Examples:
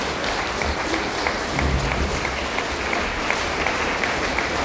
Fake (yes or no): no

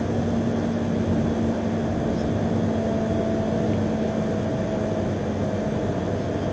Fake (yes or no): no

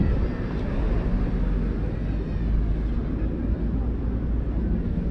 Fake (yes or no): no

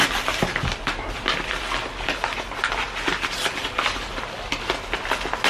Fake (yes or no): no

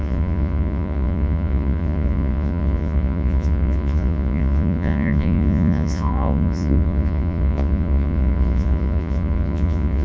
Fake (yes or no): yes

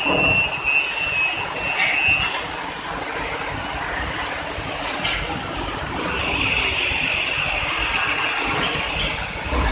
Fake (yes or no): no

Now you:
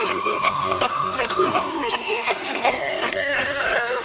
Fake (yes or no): yes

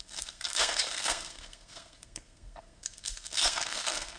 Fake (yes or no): yes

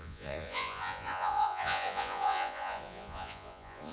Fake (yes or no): yes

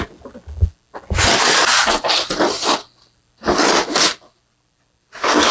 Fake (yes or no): no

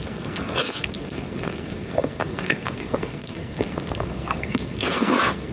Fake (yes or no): yes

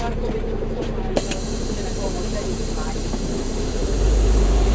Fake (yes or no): yes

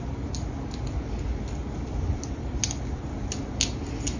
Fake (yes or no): no